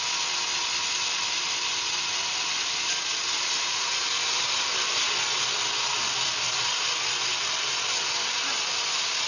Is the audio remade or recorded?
recorded